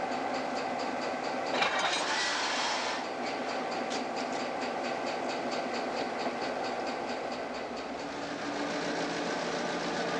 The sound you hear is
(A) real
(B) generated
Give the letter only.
A